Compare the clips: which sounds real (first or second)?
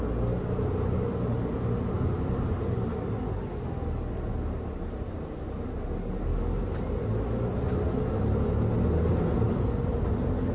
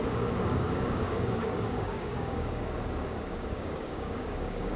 first